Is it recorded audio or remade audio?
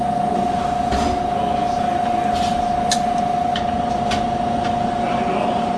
recorded